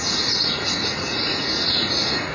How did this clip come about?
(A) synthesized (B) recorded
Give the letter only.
A